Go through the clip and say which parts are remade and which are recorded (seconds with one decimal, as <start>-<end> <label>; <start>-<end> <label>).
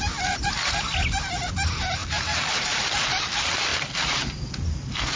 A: 0.0-2.0 recorded; 2.0-3.2 remade; 3.2-3.7 recorded; 3.7-4.3 remade; 4.3-5.2 recorded